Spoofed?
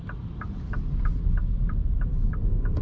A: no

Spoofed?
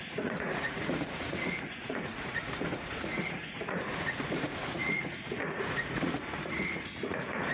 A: yes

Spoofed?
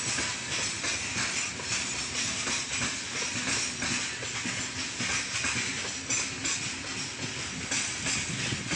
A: no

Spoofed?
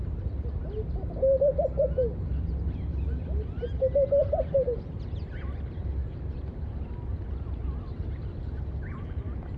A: no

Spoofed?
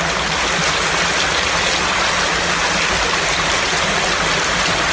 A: no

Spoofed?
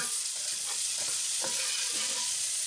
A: yes